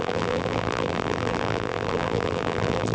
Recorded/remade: remade